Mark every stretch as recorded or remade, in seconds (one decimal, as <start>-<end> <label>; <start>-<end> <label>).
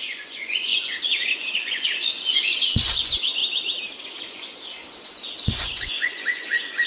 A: 0.0-3.4 remade; 3.4-4.0 recorded; 4.0-6.9 remade